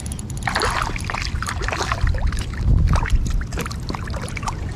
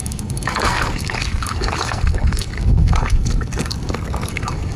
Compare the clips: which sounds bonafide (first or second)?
first